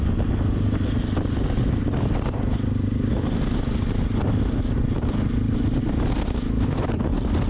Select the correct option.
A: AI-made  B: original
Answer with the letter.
B